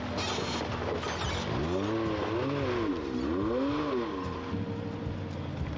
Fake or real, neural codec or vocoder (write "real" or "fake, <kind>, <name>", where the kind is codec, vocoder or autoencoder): real